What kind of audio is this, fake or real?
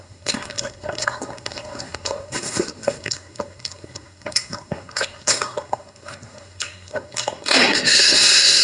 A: fake